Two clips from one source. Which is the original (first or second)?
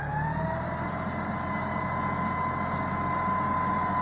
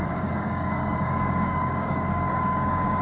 first